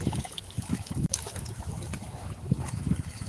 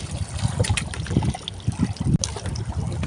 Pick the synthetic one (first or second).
first